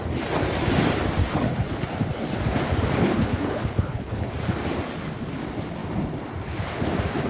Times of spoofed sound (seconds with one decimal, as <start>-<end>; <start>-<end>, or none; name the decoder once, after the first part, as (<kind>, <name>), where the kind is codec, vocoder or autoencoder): 1.2-1.8 (codec, HILCodec); 3.0-4.3

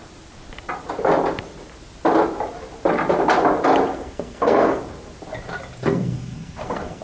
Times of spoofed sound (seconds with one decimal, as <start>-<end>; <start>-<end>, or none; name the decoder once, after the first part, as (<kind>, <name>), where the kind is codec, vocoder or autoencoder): 3.9-4.8 (codec, SNAC); 5.8-7.0

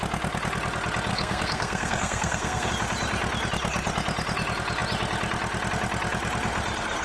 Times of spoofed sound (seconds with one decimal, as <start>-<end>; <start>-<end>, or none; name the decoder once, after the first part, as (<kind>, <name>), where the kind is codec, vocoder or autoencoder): 1.1-2.7 (codec, SNAC)

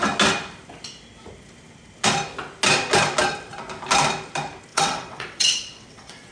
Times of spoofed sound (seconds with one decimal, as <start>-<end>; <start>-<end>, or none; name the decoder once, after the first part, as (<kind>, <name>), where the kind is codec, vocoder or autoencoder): 4.7-6.3 (vocoder, WaveNeXt)